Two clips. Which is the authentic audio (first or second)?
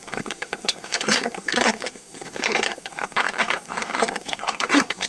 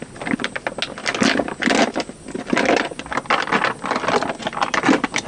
second